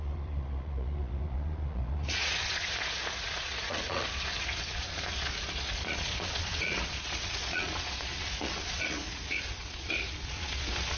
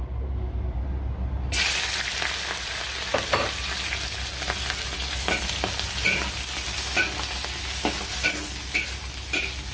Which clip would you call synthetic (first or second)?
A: first